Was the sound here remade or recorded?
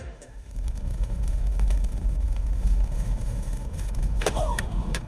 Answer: remade